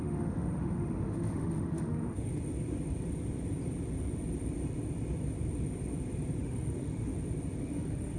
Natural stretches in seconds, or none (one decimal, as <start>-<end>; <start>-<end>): 2.3-6.4; 7.1-7.6